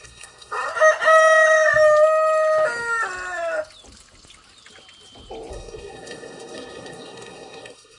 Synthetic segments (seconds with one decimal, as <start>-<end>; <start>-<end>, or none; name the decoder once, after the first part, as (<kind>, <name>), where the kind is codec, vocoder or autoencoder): 0.0-0.7 (codec, SNAC); 5.5-8.0